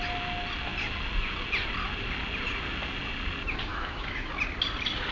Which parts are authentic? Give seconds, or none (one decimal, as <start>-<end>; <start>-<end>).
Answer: 0.0-3.7; 4.3-5.1